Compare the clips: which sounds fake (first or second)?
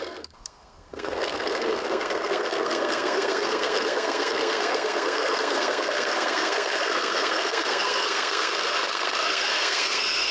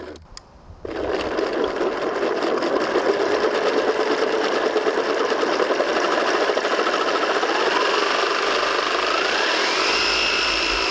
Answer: first